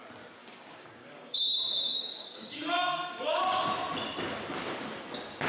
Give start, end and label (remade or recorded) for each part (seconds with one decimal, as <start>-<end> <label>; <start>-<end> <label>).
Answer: 0.0-0.4 recorded; 0.4-3.7 remade; 3.7-5.5 recorded